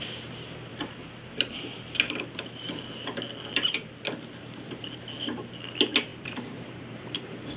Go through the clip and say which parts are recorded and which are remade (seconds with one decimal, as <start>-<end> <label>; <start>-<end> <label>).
0.0-6.1 recorded; 6.1-7.0 remade; 7.0-7.6 recorded

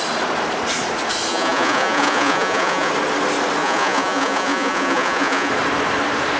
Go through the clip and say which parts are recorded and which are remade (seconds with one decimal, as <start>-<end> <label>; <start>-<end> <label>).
0.0-1.3 recorded; 1.3-2.9 remade; 2.9-3.6 recorded; 3.6-5.5 remade; 5.5-6.4 recorded

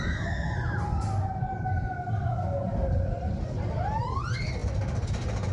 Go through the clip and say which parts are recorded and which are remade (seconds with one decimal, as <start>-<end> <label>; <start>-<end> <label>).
0.0-5.5 recorded

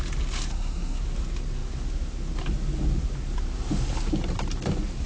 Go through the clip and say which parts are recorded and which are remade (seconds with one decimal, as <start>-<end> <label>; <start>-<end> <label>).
0.0-0.5 recorded; 0.5-1.0 remade; 1.0-5.1 recorded

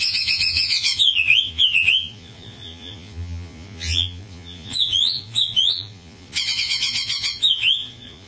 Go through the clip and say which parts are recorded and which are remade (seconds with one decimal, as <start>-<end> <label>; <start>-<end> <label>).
0.0-8.3 remade